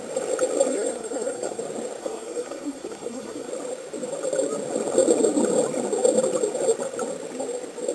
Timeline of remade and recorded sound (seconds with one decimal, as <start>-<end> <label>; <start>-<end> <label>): 0.0-0.7 recorded; 0.7-1.6 remade; 1.6-2.0 recorded; 2.0-3.5 remade; 3.5-7.9 recorded